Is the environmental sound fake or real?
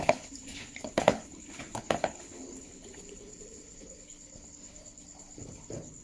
fake